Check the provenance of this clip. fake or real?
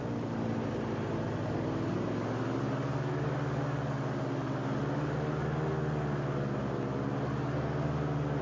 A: real